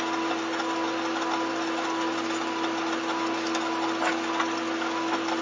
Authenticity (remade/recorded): recorded